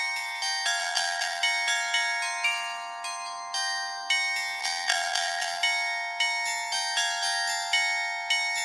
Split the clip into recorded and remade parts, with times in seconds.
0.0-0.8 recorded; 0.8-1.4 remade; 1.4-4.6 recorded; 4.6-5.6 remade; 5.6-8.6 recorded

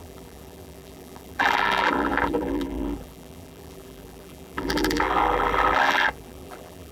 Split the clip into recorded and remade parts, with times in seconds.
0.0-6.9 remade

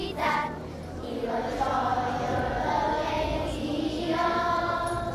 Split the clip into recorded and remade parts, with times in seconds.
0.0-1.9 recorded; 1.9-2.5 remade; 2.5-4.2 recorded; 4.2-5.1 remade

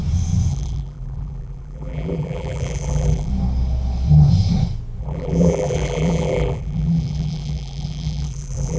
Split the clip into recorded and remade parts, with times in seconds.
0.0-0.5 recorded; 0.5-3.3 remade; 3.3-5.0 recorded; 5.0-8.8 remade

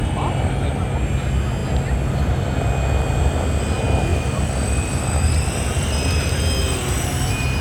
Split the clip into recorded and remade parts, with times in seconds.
0.0-4.1 recorded; 4.1-7.6 remade

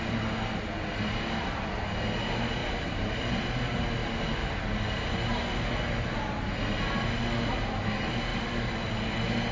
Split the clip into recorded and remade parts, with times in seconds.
0.0-2.6 recorded; 2.6-3.5 remade; 3.5-8.3 recorded; 8.3-8.9 remade; 8.9-9.5 recorded